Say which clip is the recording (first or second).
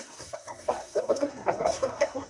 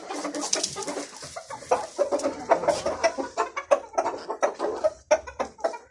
second